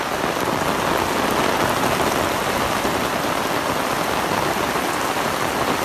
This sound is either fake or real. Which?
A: real